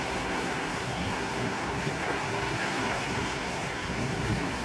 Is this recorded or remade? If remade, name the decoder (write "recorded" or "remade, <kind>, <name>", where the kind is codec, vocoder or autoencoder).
remade, codec, SNAC